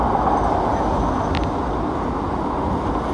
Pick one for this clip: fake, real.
real